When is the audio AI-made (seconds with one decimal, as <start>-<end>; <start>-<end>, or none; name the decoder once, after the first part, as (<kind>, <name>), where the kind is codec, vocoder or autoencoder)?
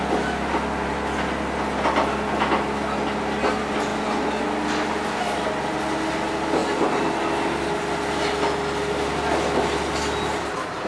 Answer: none